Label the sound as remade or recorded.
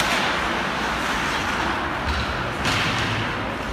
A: recorded